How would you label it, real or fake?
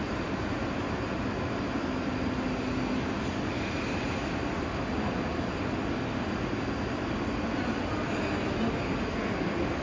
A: real